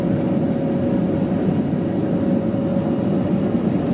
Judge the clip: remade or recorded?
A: recorded